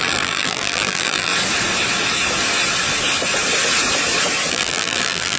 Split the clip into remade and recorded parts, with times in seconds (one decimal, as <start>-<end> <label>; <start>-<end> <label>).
0.0-1.3 remade; 1.3-4.5 recorded; 4.5-5.4 remade